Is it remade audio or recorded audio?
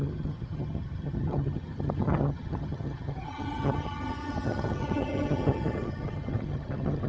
remade